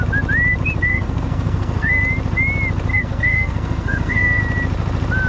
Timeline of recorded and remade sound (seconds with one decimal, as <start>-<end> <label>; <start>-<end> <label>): 0.0-0.9 recorded; 0.9-2.0 remade; 2.0-2.9 recorded; 2.9-4.4 remade; 4.4-5.3 recorded